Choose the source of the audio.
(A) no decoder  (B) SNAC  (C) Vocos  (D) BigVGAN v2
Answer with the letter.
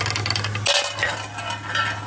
A